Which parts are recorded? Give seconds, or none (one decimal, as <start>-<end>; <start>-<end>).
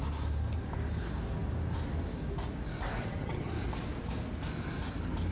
0.0-3.0; 3.5-5.3